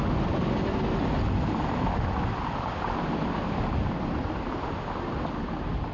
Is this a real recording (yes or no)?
yes